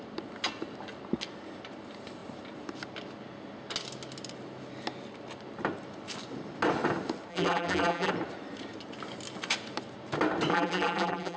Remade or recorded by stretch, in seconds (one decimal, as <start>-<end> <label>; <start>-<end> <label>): 0.0-7.3 recorded; 7.3-8.1 remade; 8.1-10.5 recorded; 10.5-11.4 remade